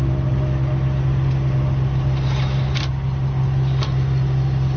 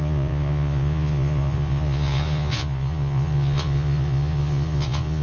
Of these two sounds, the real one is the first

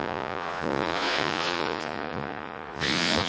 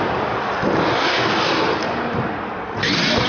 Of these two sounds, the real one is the second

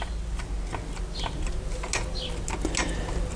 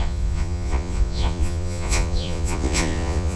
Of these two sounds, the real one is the first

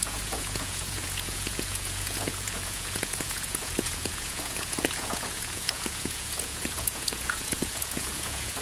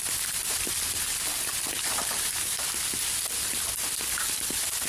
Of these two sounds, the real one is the second